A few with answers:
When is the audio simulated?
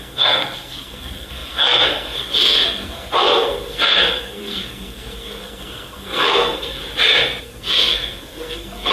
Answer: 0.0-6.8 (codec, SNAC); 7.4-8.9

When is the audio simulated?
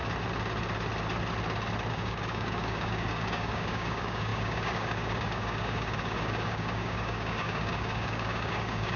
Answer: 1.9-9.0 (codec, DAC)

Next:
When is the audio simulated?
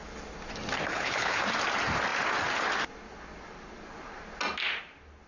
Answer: 0.9-1.4 (codec, HILCodec)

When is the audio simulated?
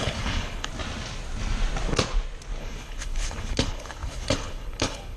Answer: 0.0-0.7 (codec, HILCodec); 2.6-5.2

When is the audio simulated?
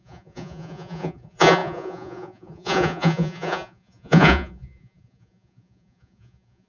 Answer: 0.0-6.7 (vocoder, Vocos)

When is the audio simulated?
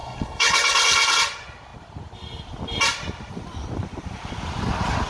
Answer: 0.0-1.2 (codec, HILCodec)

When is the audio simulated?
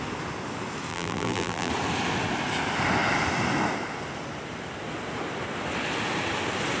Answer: 0.9-1.7 (vocoder, BigVGAN v2)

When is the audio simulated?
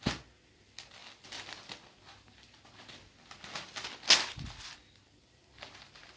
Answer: none